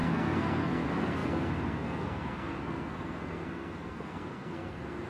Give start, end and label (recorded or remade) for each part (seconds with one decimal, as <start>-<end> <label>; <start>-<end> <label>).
0.0-5.1 remade